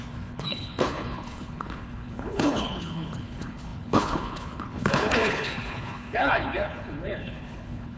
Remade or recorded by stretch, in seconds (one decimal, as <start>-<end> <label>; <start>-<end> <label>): 0.0-8.0 remade